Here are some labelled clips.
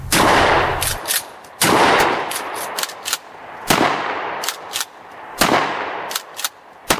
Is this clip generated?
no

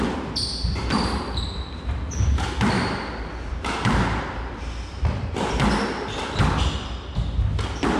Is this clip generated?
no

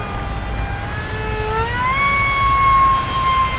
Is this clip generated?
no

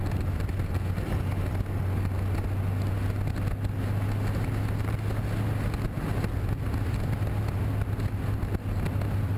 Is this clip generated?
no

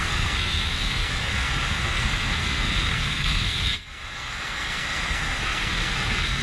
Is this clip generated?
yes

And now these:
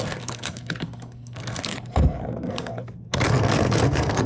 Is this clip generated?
yes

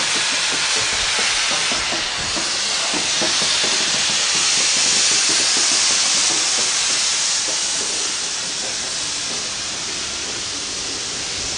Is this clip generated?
no